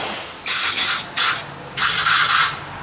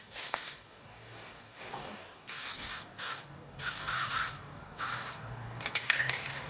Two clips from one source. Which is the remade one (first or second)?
second